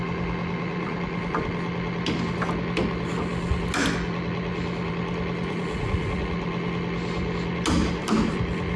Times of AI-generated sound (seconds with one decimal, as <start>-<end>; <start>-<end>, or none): none